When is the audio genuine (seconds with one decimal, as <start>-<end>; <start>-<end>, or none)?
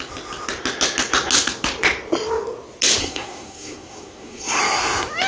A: 0.0-3.0; 4.6-5.3